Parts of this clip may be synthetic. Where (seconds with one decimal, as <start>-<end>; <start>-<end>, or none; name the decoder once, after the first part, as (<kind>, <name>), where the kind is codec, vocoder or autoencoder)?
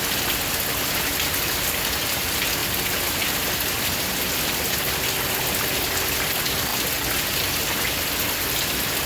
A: none